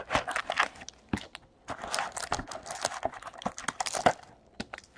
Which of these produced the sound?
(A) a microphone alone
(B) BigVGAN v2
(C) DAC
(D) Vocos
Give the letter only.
A